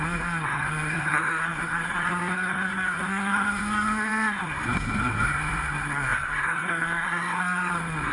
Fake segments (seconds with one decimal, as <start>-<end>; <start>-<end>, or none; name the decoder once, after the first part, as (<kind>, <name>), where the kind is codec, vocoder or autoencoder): 0.0-8.1 (codec, SNAC)